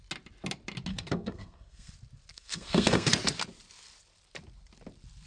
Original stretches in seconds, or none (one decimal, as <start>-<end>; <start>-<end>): 0.0-0.9; 1.9-2.3; 3.1-5.3